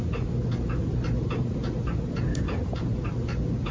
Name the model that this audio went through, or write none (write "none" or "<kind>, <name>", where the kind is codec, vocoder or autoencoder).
none